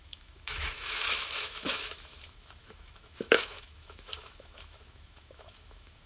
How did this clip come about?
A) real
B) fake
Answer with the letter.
B